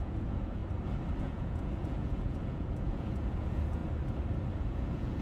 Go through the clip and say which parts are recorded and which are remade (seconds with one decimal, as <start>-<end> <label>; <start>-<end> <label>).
0.0-0.6 remade; 0.6-1.2 recorded; 1.2-3.8 remade; 3.8-4.6 recorded; 4.6-5.2 remade